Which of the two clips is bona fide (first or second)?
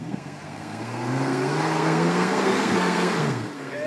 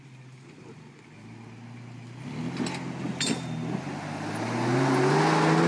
second